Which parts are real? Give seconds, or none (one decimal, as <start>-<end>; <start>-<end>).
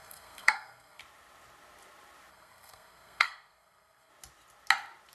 1.0-2.3; 4.1-5.1